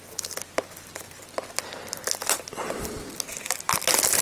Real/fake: real